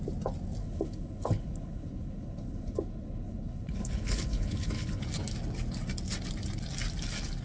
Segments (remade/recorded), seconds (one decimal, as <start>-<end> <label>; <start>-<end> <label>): 0.0-0.6 recorded; 0.6-5.0 remade; 5.0-7.4 recorded